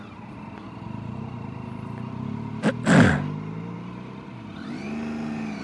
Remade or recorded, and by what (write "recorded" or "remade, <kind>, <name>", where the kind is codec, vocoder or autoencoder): recorded